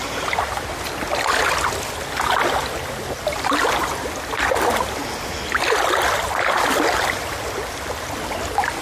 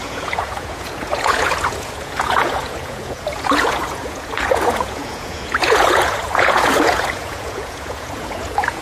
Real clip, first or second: first